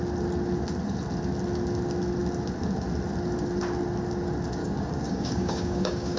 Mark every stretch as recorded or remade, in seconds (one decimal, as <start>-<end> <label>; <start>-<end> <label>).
0.0-4.6 recorded; 4.6-6.2 remade